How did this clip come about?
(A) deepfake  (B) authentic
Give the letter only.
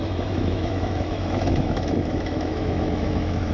A